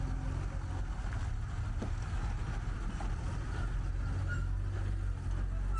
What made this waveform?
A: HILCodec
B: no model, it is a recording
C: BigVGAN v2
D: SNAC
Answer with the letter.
B